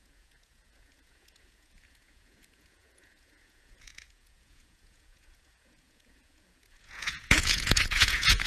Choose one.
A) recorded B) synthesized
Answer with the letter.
B